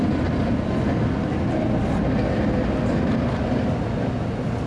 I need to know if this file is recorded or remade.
recorded